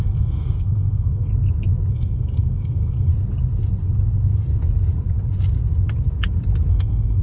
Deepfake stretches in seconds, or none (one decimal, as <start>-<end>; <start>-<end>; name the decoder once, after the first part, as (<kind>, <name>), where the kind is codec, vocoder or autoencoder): 0.0-1.3 (codec, SNAC); 1.9-3.1; 6.7-7.2